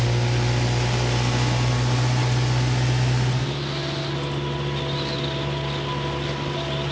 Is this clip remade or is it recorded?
recorded